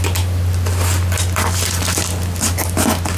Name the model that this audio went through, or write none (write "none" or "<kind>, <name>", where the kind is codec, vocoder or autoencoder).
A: none